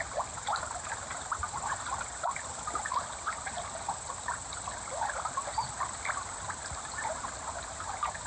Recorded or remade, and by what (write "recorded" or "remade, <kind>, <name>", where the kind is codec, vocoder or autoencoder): recorded